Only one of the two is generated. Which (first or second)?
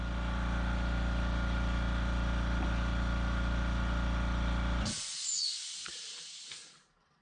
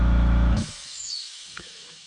second